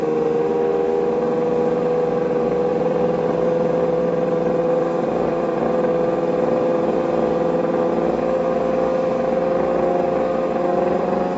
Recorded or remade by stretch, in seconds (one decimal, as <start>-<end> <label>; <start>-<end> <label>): 0.0-2.7 recorded; 2.7-7.9 remade; 7.9-11.4 recorded